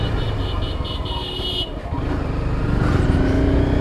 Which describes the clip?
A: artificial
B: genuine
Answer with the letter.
B